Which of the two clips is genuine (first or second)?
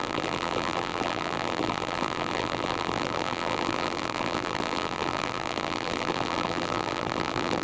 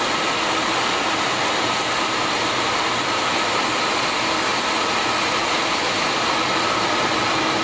second